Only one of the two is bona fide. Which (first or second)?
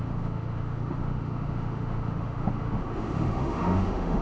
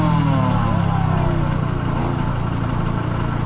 second